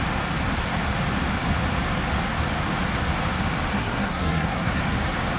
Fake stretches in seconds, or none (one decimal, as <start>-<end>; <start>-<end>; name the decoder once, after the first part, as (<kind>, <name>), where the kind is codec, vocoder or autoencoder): 3.7-4.8 (codec, SNAC)